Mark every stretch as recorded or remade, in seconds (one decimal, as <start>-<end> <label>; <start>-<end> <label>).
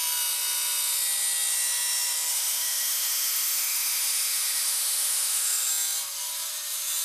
0.0-2.3 recorded; 2.3-5.7 remade; 5.7-7.0 recorded